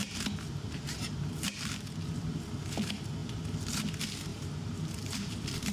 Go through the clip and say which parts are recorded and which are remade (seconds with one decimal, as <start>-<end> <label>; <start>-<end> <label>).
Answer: 0.0-1.1 remade; 1.1-4.3 recorded; 4.3-5.3 remade; 5.3-5.7 recorded